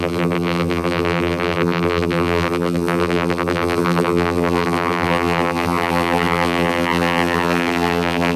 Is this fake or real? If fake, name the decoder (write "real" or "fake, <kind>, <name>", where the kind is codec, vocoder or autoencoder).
fake, vocoder, BigVGAN v2